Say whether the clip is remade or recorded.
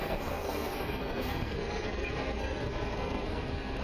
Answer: remade